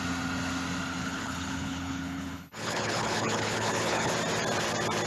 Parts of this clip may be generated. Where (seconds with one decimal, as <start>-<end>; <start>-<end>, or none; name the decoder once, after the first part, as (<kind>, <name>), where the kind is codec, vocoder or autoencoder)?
1.0-4.1 (codec, HILCodec)